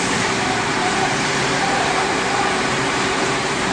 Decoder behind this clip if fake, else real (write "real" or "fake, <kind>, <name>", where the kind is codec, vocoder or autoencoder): fake, vocoder, BigVGAN v2